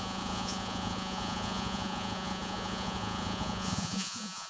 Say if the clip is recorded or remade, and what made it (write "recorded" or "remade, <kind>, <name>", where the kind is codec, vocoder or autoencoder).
remade, vocoder, Vocos